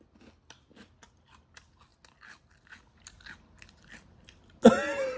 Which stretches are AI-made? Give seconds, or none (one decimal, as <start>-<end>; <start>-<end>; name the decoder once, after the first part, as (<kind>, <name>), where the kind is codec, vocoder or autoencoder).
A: none